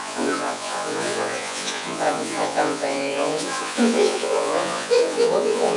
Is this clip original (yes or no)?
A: no